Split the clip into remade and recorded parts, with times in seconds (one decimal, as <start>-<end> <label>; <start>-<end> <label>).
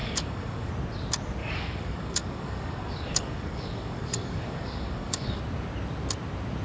0.0-0.7 remade; 0.7-1.4 recorded; 1.4-5.4 remade; 5.4-6.6 recorded